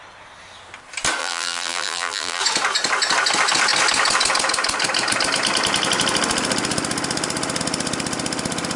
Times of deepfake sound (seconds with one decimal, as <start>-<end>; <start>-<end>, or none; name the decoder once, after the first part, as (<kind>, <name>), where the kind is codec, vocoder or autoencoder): 1.2-2.4 (vocoder, BigVGAN v2)